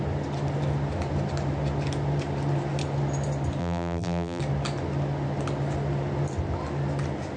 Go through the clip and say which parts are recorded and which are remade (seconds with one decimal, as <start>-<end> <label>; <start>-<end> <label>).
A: 0.0-3.6 recorded; 3.6-4.4 remade; 4.4-7.4 recorded